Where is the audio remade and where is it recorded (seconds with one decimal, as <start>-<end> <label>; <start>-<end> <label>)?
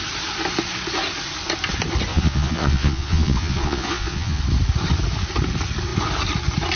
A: 0.0-2.1 recorded; 2.1-4.4 remade; 4.4-6.8 recorded